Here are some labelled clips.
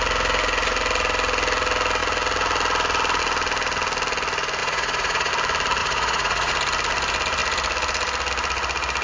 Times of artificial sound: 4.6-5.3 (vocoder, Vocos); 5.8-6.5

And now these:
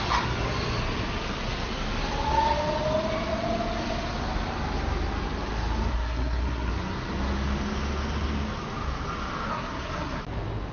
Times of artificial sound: 5.9-6.7 (codec, SNAC); 9.5-10.2